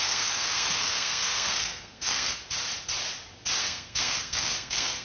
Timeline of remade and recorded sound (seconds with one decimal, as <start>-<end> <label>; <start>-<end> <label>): 0.0-2.4 remade; 2.4-3.6 recorded; 3.6-5.0 remade